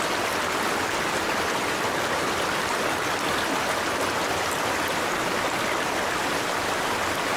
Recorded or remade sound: recorded